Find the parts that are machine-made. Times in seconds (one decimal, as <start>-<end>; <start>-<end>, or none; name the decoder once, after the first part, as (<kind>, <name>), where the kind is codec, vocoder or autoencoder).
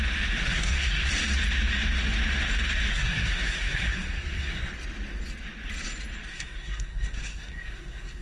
0.4-1.1 (codec, SNAC); 2.9-4.7; 6.3-8.2